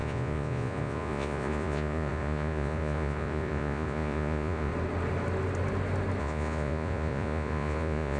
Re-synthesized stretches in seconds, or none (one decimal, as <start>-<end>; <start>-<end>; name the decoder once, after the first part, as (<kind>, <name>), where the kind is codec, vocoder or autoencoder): 0.0-4.7 (vocoder, Vocos); 6.2-8.2